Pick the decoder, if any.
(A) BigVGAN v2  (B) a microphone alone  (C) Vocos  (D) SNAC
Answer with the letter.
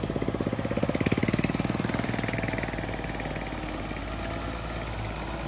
B